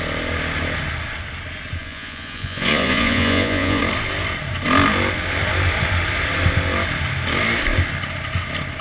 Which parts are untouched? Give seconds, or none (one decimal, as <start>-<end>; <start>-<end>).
0.0-1.8; 3.8-8.8